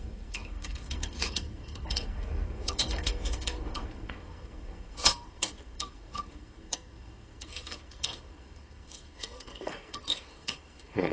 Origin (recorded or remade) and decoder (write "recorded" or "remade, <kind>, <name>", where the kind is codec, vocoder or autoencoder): remade, codec, SNAC